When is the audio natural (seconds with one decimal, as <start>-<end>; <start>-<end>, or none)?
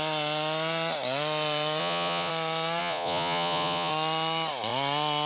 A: 0.0-1.8; 2.3-2.8; 3.9-5.3